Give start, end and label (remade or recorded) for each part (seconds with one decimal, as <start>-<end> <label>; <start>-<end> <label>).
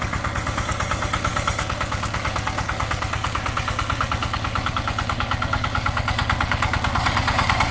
0.0-7.7 remade